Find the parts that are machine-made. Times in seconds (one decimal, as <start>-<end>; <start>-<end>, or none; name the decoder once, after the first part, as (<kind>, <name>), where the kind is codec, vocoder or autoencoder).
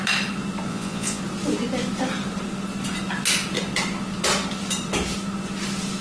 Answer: 0.7-1.2 (vocoder, Vocos)